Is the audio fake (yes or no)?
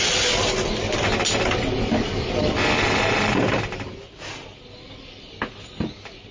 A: no